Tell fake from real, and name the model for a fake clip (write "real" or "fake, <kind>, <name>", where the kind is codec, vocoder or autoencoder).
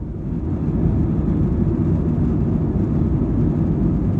real